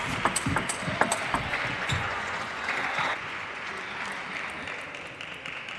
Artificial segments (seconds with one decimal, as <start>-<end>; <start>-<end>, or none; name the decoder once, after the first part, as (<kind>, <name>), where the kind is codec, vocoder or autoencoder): 1.5-3.7 (vocoder, Vocos)